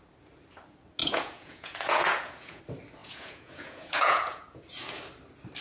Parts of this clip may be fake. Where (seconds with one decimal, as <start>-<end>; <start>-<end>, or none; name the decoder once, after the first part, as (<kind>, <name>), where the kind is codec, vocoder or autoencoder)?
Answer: 1.0-2.6 (vocoder, Vocos); 3.0-4.6